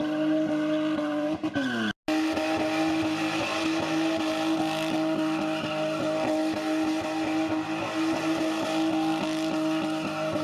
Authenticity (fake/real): real